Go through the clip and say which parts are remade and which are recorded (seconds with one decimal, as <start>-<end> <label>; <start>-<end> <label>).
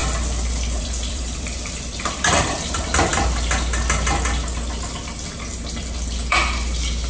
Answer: 0.0-0.8 recorded; 0.8-3.1 remade; 3.1-7.1 recorded